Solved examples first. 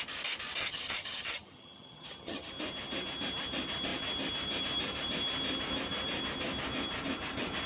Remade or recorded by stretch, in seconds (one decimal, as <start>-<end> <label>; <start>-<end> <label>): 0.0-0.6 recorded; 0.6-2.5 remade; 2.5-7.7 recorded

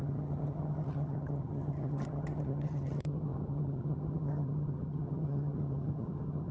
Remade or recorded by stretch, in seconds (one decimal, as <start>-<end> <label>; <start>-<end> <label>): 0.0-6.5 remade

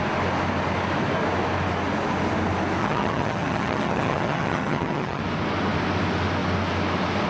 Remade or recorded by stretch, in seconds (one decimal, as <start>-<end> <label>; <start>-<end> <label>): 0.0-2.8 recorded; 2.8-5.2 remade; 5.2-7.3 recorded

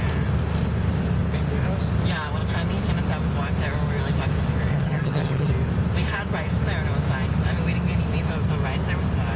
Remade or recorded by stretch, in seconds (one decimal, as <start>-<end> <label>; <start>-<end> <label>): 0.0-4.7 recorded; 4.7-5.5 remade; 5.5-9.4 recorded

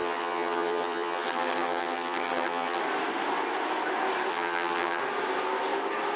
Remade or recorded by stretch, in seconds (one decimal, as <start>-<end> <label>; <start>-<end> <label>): 0.0-2.8 remade; 2.8-4.3 recorded; 4.3-5.0 remade; 5.0-6.2 recorded

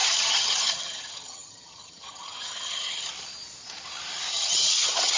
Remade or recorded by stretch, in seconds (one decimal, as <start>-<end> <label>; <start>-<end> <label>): 0.0-3.1 remade; 3.1-4.3 recorded; 4.3-5.2 remade

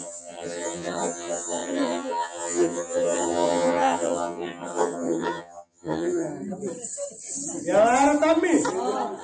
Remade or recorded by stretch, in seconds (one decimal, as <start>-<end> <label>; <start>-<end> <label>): 0.0-6.3 remade; 6.3-9.2 recorded